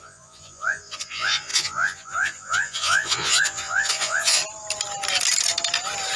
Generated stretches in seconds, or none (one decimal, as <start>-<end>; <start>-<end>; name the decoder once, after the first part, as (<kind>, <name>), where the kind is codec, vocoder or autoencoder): 0.0-4.4 (vocoder, Vocos)